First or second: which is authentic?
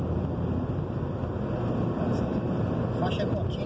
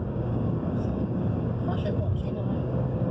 first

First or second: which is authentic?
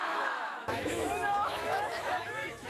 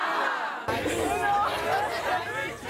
second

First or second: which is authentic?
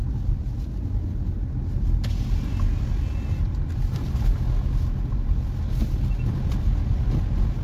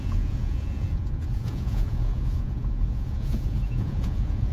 first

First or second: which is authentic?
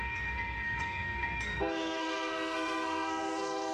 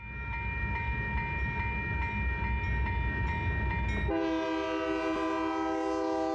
second